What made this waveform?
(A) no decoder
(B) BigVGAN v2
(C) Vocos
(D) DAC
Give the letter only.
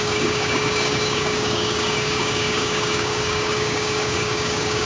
D